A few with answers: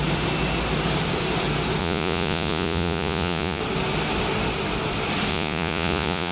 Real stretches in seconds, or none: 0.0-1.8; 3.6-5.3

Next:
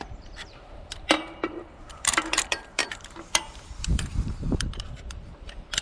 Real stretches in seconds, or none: none

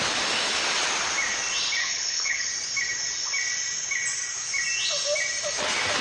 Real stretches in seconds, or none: 0.0-1.8; 2.5-6.0

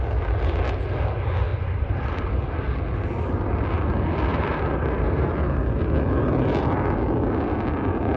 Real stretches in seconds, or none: 0.0-1.5; 2.3-4.3; 5.3-8.2

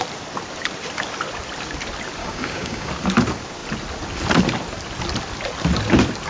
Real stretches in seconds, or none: 0.0-2.2; 2.9-6.3

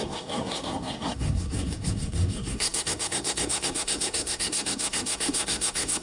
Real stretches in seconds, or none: none